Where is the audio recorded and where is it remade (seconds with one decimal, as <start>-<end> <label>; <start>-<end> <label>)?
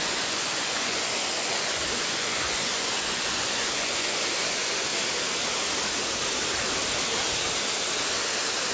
0.0-4.9 remade; 4.9-8.7 recorded